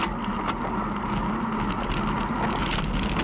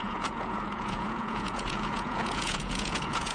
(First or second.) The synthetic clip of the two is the second